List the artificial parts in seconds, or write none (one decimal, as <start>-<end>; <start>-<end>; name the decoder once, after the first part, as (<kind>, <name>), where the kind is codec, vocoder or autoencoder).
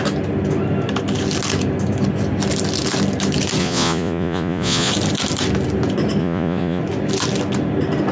3.6-4.9 (vocoder, Vocos); 6.2-6.8